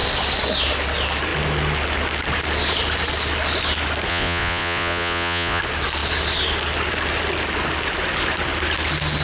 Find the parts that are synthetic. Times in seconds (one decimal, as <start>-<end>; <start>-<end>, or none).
4.1-5.6